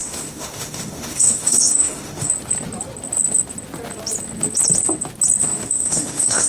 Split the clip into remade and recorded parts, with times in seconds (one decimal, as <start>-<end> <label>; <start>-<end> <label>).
0.0-2.3 remade; 2.3-5.4 recorded; 5.4-6.5 remade